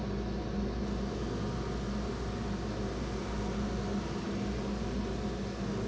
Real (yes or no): yes